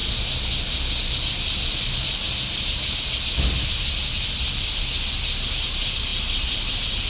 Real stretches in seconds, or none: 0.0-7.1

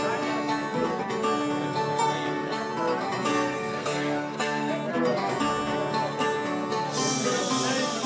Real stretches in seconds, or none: 0.0-3.3; 4.7-8.1

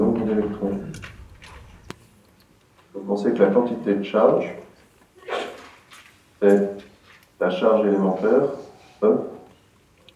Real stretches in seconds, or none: 0.0-10.2

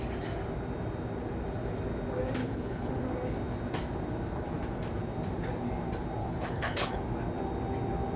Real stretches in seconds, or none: 0.0-2.4; 2.9-6.2; 7.0-8.2

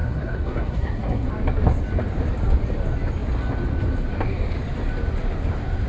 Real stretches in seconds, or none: 1.3-5.9

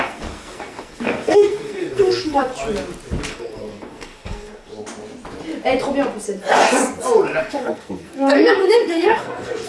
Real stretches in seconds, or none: 2.5-3.3; 4.7-7.4

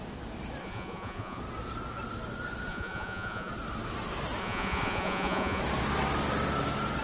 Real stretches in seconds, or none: 0.0-0.6; 1.4-2.7; 3.5-4.4; 5.6-7.0

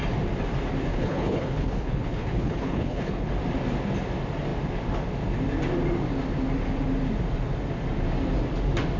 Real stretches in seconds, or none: 0.0-0.9; 3.3-9.0